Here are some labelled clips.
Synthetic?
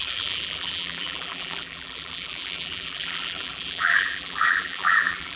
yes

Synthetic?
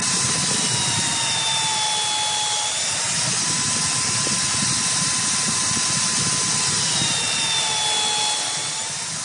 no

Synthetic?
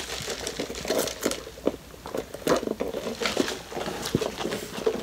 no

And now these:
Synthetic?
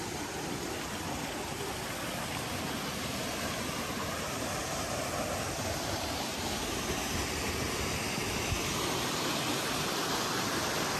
no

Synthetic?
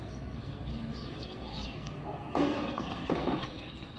yes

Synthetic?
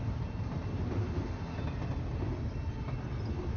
no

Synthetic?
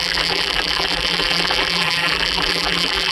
yes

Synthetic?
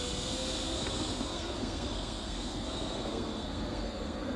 yes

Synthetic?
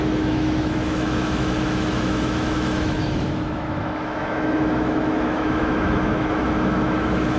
yes